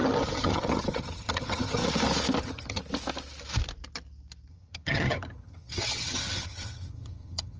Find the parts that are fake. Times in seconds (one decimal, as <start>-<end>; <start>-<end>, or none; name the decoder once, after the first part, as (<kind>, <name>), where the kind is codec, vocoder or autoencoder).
0.0-1.8 (vocoder, HiFi-GAN); 2.4-2.8; 4.5-7.6